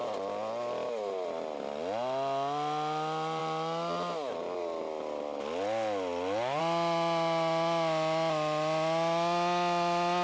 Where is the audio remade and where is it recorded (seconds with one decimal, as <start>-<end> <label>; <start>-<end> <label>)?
0.0-10.2 recorded